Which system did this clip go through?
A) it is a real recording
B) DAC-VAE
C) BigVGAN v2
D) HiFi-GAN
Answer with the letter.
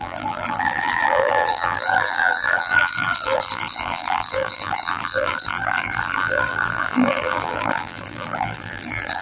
C